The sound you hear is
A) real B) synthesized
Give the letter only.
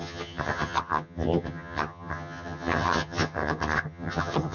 B